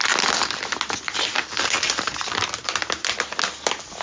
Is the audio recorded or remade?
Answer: recorded